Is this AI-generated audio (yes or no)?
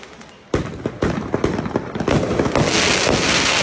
no